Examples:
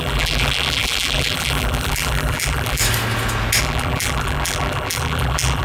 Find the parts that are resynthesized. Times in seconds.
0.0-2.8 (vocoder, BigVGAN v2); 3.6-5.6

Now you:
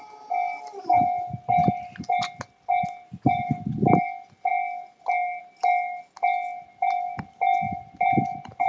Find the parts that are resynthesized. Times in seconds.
none

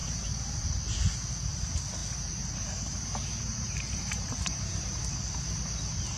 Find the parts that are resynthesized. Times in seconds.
2.0-5.0 (vocoder, BigVGAN v2)

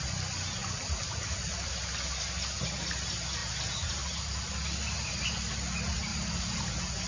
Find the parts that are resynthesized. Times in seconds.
0.6-1.7 (vocoder, BigVGAN v2); 6.1-6.6

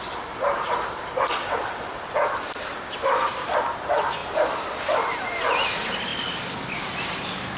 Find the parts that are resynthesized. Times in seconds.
0.0-6.1 (vocoder, BigVGAN v2); 6.7-7.6